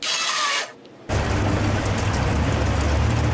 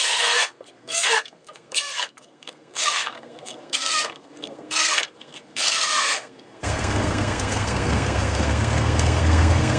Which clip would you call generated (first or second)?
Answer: second